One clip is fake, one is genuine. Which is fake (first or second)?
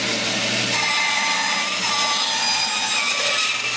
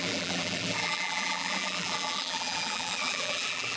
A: second